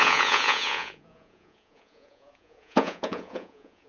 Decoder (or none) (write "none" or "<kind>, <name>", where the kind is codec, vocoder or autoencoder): vocoder, Vocos